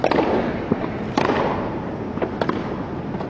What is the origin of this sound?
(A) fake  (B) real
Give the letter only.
B